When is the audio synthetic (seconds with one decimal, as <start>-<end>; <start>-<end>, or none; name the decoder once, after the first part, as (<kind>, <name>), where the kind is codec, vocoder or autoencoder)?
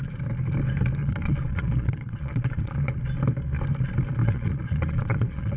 1.0-3.0 (vocoder, Vocos); 4.2-5.6